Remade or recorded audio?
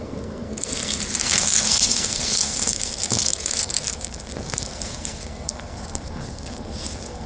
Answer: remade